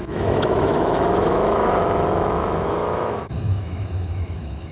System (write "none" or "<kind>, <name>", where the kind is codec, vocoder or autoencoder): autoencoder, DAC-VAE